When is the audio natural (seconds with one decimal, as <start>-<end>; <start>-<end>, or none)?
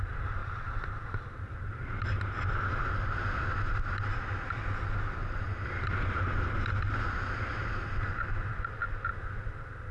0.0-0.4; 1.9-5.2; 6.2-8.8; 9.5-9.9